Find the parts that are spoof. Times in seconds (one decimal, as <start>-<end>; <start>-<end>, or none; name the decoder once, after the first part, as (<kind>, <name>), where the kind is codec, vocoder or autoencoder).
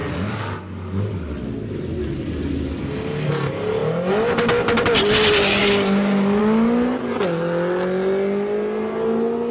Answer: 0.0-1.2 (codec, DAC); 5.6-6.4